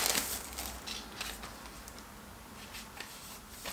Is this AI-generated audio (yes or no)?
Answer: no